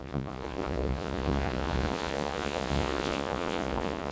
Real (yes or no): no